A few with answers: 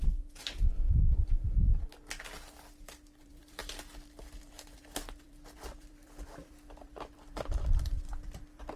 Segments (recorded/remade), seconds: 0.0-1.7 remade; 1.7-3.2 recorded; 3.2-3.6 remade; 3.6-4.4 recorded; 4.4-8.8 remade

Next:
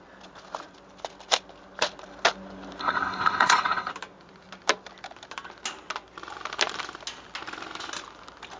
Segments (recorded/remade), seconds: 0.0-2.8 recorded; 2.8-3.9 remade; 3.9-8.6 recorded

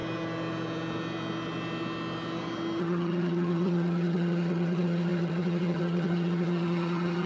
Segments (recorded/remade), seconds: 0.0-2.8 recorded; 2.8-7.3 remade

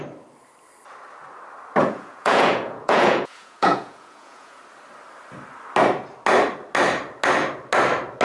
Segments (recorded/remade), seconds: 0.0-1.8 recorded; 1.8-4.6 remade; 4.6-8.2 recorded

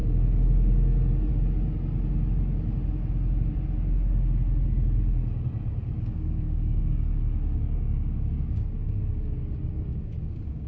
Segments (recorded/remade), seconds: 0.0-5.7 recorded; 5.7-10.7 remade

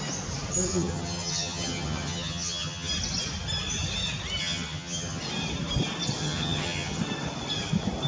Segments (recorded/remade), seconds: 0.0-0.7 recorded; 0.7-2.9 remade; 2.9-4.4 recorded; 4.4-5.2 remade; 5.2-6.2 recorded; 6.2-7.0 remade; 7.0-8.1 recorded

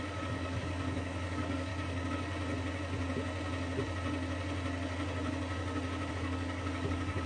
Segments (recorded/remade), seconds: 0.0-1.7 remade; 1.7-6.1 recorded; 6.1-7.3 remade